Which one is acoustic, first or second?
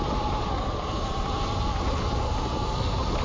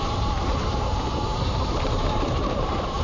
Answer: first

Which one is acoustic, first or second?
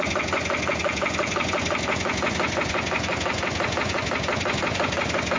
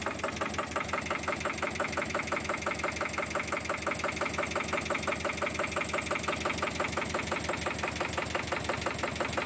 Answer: second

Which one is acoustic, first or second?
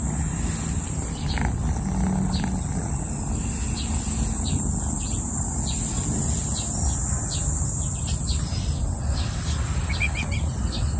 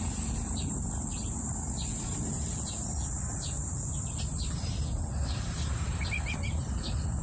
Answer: first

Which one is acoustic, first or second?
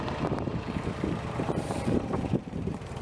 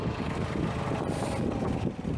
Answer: second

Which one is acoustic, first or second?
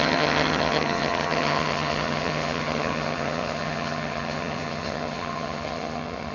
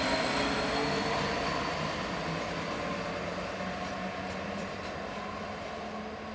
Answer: second